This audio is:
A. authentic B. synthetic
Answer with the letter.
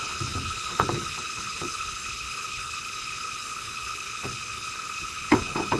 B